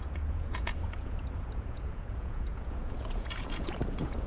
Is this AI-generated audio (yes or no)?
yes